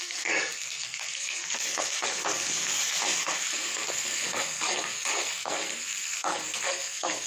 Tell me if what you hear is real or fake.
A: fake